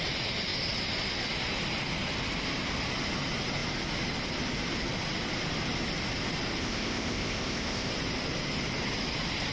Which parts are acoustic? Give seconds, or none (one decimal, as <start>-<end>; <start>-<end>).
0.0-6.6; 7.9-9.5